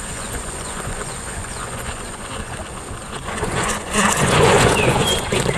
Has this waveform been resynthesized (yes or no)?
yes